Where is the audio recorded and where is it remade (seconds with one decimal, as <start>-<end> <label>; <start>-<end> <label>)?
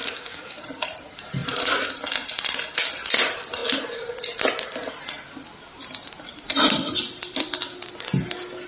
0.0-0.6 remade; 0.6-8.7 recorded